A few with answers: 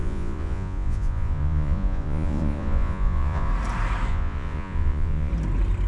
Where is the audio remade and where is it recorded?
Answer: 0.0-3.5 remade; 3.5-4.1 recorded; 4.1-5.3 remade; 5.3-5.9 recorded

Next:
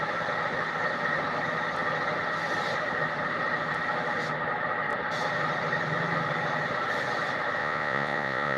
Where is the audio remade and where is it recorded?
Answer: 0.0-7.6 recorded; 7.6-8.6 remade